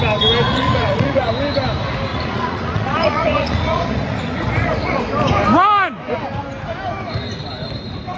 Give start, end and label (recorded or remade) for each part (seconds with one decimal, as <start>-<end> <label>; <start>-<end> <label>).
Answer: 0.0-0.5 recorded; 0.5-1.3 remade; 1.3-2.1 recorded; 2.1-5.0 remade; 5.0-8.2 recorded

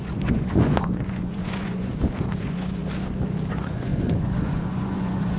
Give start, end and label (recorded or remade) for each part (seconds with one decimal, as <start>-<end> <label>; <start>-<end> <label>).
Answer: 0.0-1.9 remade; 1.9-2.4 recorded; 2.4-2.8 remade; 2.8-3.5 recorded; 3.5-5.4 remade

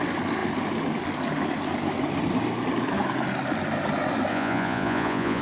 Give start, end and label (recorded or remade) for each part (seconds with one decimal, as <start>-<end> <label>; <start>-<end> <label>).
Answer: 0.0-4.3 recorded; 4.3-5.4 remade

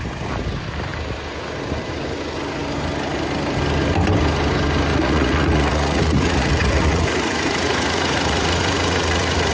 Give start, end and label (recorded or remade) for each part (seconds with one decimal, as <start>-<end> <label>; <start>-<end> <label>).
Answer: 0.0-4.9 recorded; 4.9-9.5 remade

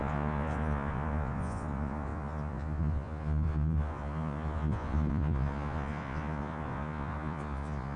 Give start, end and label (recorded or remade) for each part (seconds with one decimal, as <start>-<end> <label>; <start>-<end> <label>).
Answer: 0.0-8.0 remade

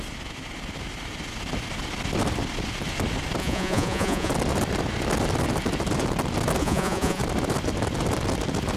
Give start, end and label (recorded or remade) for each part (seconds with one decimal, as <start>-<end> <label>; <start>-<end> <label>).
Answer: 0.0-3.4 recorded; 3.4-4.3 remade; 4.3-6.6 recorded; 6.6-7.2 remade; 7.2-8.8 recorded